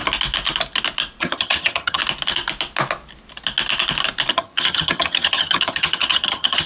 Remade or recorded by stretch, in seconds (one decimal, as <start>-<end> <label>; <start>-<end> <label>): 0.0-1.2 recorded; 1.2-2.0 remade; 2.0-4.3 recorded; 4.3-6.7 remade